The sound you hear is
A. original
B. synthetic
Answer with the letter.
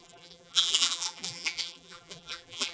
B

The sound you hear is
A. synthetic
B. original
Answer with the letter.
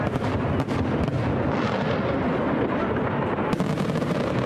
B